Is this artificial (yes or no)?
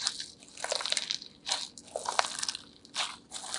no